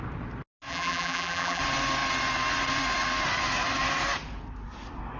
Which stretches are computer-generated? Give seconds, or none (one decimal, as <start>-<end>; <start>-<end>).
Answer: 0.7-1.6